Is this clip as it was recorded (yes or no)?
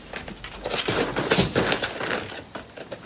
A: yes